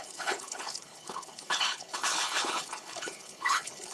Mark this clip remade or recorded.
remade